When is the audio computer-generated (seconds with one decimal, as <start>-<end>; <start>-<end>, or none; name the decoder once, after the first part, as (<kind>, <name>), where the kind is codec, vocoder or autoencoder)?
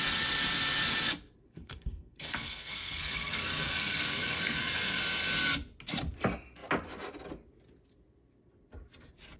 1.5-5.0 (codec, SNAC)